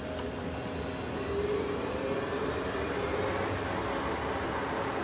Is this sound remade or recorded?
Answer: recorded